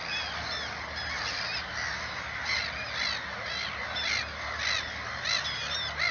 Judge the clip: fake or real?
real